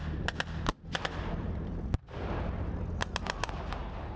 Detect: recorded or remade recorded